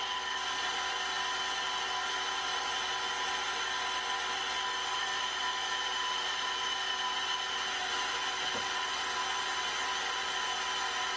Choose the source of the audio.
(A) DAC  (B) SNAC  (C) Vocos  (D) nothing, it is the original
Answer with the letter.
D